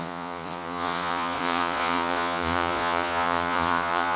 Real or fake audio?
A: fake